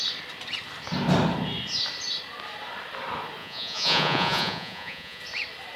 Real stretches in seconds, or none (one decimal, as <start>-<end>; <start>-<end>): 0.0-3.4; 5.2-5.8